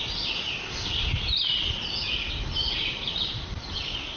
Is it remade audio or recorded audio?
recorded